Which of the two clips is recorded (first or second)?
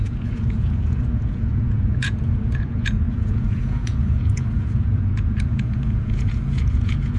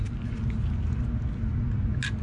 second